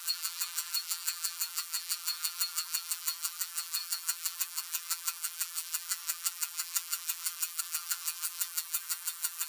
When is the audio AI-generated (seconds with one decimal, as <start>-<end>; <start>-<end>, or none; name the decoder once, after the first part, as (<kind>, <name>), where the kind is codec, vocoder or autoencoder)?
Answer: 0.0-9.5 (vocoder, BigVGAN v2)